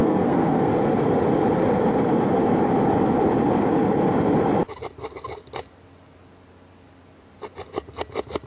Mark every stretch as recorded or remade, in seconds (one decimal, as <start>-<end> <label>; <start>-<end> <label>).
0.0-0.7 remade; 0.7-8.5 recorded